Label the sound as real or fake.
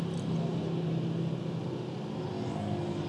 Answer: real